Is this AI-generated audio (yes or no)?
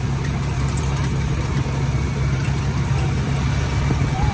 yes